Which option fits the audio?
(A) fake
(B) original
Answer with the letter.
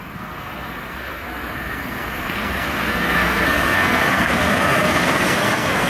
A